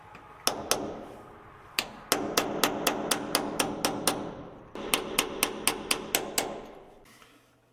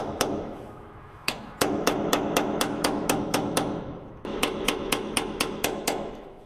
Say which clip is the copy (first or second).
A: second